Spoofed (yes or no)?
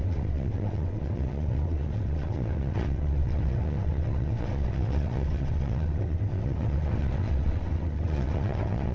yes